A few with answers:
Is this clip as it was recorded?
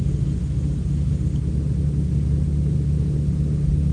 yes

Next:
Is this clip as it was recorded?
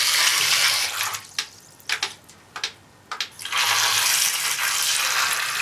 yes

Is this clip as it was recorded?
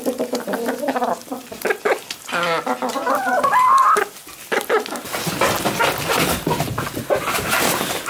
yes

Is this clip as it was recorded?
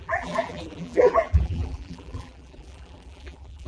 no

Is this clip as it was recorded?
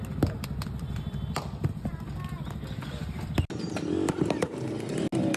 yes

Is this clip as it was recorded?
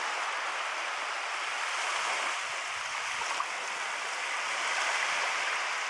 yes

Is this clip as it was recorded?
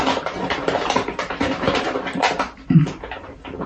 no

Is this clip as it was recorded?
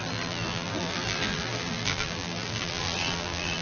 no